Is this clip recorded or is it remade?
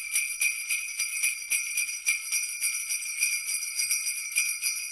recorded